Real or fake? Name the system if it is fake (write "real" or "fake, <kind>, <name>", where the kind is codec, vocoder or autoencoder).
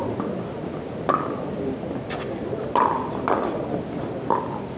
real